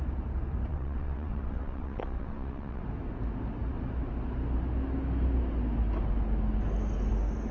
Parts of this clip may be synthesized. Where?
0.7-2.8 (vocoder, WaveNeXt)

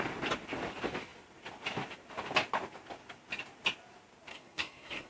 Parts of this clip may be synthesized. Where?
4.3-5.1 (codec, SNAC)

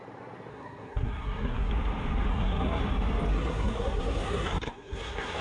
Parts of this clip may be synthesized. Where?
0.5-1.7 (codec, SNAC); 2.3-2.8; 3.3-5.4

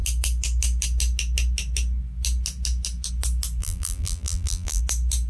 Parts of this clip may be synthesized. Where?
3.6-4.8 (vocoder, BigVGAN v2)

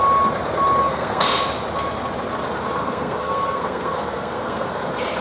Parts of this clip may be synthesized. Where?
0.8-1.4 (codec, SNAC); 2.8-4.8